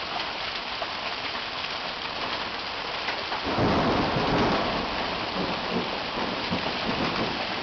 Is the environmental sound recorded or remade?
recorded